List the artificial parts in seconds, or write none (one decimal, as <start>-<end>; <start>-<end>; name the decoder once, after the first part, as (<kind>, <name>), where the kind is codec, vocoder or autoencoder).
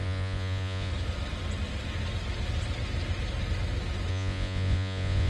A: 0.0-0.9 (vocoder, Vocos); 4.1-5.3